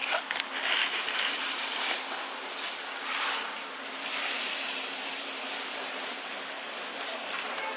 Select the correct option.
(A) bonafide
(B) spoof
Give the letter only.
B